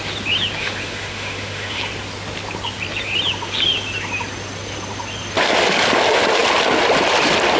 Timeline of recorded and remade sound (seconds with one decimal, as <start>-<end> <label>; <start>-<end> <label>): 0.0-0.6 recorded; 0.6-1.8 remade; 1.8-7.6 recorded